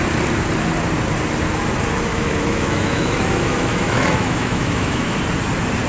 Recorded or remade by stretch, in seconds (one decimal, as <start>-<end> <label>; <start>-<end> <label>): 0.0-2.1 recorded; 2.1-5.2 remade; 5.2-5.9 recorded